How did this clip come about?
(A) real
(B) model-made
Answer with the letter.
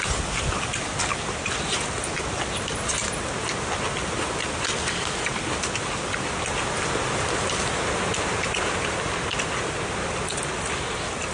A